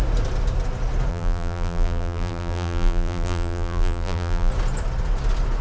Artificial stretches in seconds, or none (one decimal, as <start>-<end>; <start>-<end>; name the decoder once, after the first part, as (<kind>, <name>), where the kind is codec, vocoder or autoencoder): 1.1-4.5 (vocoder, BigVGAN v2)